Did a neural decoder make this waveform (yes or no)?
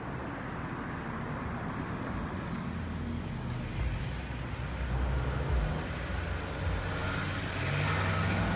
no